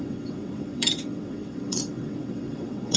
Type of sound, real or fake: fake